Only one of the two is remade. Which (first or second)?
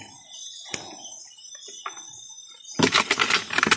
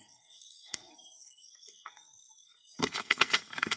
second